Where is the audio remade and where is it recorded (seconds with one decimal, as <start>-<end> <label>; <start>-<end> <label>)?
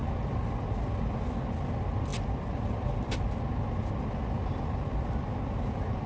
0.0-6.1 recorded